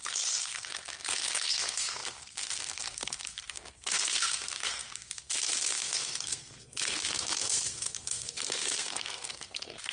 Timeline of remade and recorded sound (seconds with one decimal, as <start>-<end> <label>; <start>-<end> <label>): 0.0-9.9 remade